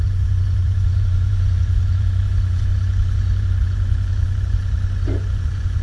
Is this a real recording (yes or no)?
no